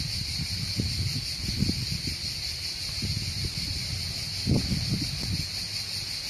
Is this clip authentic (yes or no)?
yes